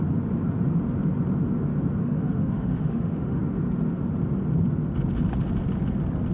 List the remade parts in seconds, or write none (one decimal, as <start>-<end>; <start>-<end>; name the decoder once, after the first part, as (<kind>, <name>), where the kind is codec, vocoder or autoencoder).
2.0-3.4 (autoencoder, DAC-VAE)